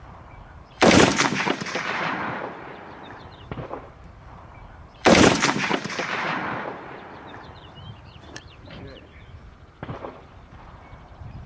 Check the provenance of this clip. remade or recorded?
remade